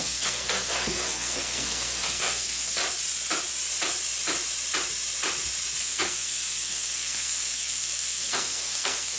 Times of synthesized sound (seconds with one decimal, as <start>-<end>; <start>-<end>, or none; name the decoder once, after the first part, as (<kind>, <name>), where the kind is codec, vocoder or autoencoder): 0.0-2.8 (codec, SNAC); 5.8-9.2